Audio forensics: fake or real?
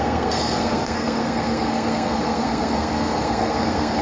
fake